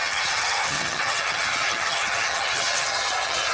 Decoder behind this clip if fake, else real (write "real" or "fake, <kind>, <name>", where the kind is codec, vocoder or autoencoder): fake, vocoder, HiFi-GAN